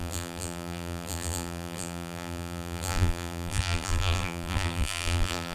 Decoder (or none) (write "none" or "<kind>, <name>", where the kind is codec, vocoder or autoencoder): vocoder, BigVGAN v2